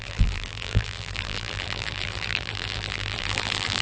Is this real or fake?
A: fake